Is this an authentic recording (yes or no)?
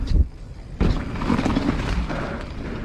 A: yes